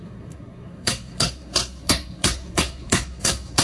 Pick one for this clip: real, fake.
fake